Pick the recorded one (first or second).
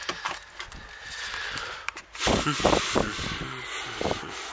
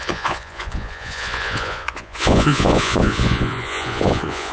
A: first